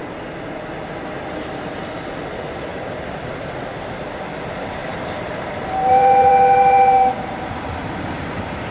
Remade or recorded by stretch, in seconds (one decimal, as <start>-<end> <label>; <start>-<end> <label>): 0.0-4.8 recorded; 4.8-6.3 remade; 6.3-7.8 recorded; 7.8-8.7 remade